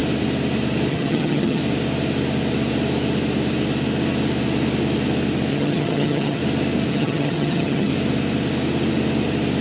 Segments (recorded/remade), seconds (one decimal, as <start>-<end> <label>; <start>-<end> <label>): 0.0-0.9 recorded; 0.9-1.6 remade; 1.6-5.5 recorded; 5.5-6.4 remade; 6.4-6.9 recorded; 6.9-7.9 remade; 7.9-9.6 recorded